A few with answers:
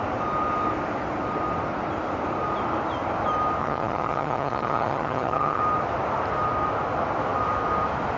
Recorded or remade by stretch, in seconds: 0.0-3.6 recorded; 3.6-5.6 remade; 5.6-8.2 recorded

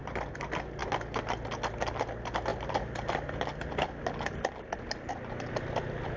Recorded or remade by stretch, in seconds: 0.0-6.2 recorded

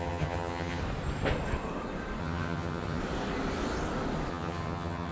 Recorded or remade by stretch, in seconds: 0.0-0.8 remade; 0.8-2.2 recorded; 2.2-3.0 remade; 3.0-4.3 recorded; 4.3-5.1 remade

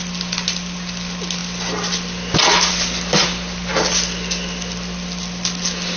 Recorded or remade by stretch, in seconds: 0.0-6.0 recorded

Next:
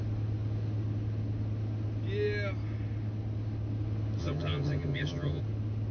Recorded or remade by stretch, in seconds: 0.0-4.2 recorded; 4.2-5.4 remade; 5.4-5.9 recorded